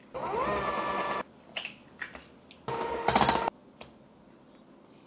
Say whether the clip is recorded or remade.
recorded